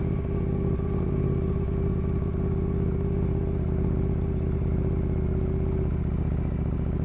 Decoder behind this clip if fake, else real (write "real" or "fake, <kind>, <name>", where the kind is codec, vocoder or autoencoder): real